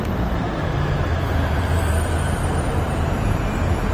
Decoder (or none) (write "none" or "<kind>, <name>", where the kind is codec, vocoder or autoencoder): vocoder, BigVGAN v2